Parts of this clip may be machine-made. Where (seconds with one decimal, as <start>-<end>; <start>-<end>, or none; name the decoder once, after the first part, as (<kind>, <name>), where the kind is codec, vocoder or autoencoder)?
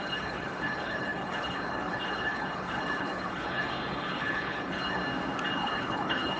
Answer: 0.0-5.0 (codec, HILCodec); 5.5-6.4